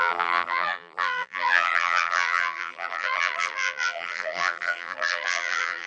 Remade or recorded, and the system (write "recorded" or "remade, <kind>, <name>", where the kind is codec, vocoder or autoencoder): remade, vocoder, BigVGAN v2